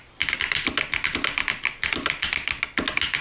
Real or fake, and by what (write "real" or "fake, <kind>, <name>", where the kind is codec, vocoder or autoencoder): real